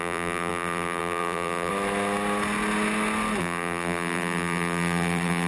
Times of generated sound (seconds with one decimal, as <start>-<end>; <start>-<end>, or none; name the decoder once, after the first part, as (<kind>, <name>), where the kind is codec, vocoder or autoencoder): 0.0-1.7 (vocoder, BigVGAN v2); 3.4-5.5